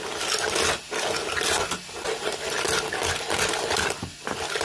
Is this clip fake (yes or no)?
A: no